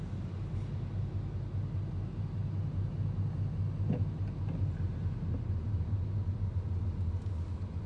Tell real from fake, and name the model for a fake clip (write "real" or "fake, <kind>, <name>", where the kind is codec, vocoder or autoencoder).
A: real